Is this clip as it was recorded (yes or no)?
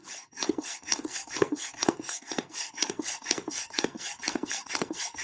no